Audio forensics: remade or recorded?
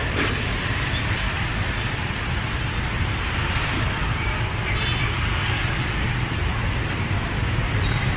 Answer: recorded